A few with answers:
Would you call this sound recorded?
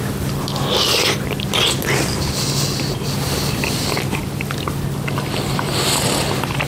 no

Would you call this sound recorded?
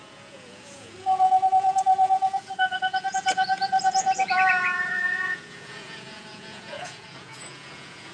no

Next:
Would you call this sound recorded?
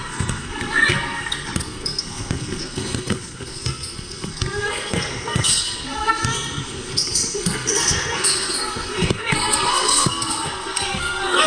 no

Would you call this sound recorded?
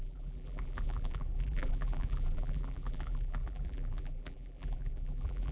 no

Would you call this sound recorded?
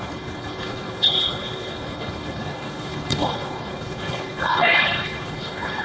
no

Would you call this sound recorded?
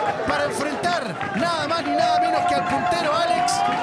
yes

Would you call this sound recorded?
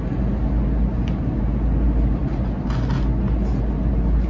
yes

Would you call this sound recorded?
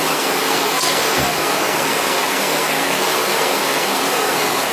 no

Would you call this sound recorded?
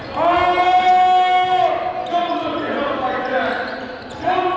yes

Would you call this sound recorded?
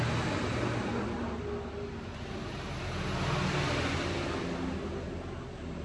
yes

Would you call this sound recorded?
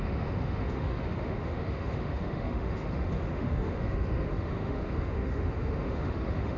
no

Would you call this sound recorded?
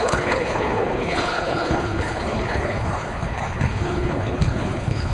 no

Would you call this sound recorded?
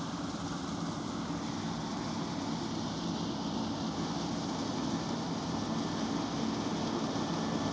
yes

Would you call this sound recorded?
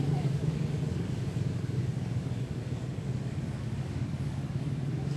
no